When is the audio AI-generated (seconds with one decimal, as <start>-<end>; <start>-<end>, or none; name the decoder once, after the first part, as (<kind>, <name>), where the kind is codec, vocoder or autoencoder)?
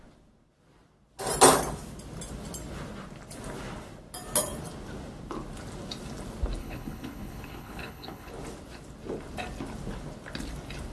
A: 6.6-8.3 (codec, HILCodec)